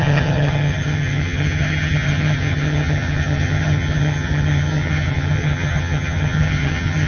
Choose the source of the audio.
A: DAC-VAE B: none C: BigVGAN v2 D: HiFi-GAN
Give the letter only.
D